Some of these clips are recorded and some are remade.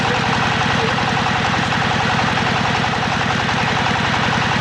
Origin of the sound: recorded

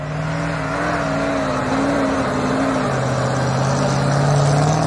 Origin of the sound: recorded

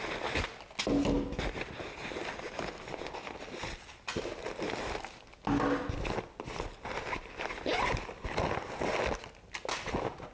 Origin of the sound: recorded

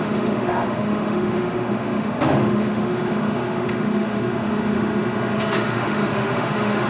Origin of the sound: remade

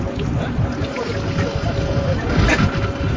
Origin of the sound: recorded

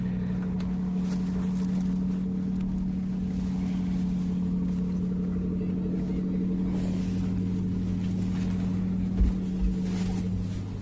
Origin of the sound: recorded